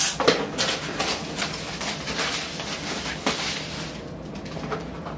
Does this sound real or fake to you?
real